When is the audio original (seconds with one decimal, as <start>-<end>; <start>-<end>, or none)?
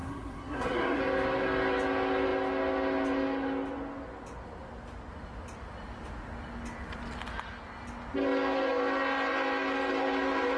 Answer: 1.0-10.6